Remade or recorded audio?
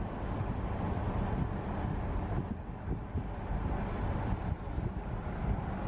recorded